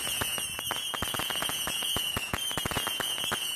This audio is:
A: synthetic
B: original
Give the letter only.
A